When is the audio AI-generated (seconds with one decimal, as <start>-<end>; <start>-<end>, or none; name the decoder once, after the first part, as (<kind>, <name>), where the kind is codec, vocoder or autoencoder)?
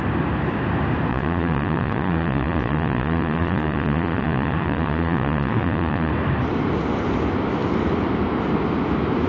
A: 1.1-6.1 (vocoder, Vocos)